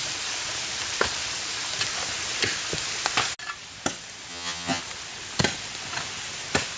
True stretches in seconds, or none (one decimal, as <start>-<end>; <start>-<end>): 0.0-4.3; 4.8-6.8